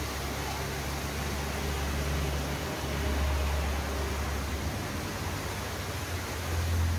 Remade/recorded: recorded